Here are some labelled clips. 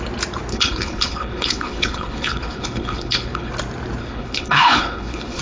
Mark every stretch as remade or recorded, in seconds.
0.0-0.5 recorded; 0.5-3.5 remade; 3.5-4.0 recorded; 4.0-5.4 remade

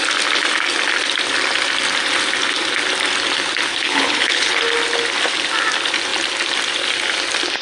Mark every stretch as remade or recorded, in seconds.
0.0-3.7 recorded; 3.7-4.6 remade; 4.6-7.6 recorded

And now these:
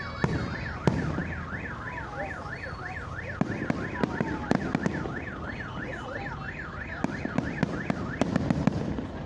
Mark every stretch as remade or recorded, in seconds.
0.0-9.3 recorded

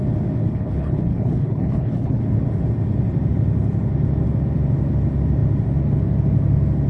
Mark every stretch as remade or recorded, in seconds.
0.0-0.4 recorded; 0.4-2.2 remade; 2.2-6.9 recorded

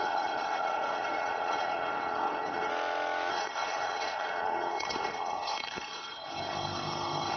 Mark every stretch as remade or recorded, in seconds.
0.0-2.7 remade; 2.7-3.3 recorded; 3.3-7.4 remade

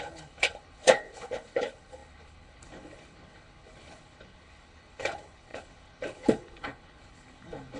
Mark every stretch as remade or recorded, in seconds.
0.0-7.8 remade